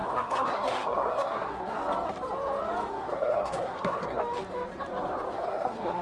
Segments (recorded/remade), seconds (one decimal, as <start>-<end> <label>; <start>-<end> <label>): 0.0-1.8 remade; 1.8-2.9 recorded; 2.9-4.2 remade; 4.2-5.3 recorded; 5.3-6.0 remade